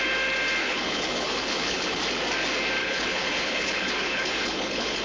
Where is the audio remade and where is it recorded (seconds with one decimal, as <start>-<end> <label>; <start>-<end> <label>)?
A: 0.0-0.6 recorded; 0.6-2.0 remade; 2.0-2.8 recorded; 2.8-5.0 remade